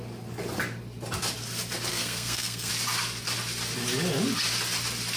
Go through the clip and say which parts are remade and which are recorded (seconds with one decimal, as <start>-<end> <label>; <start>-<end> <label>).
0.0-1.9 recorded; 1.9-2.7 remade; 2.7-5.2 recorded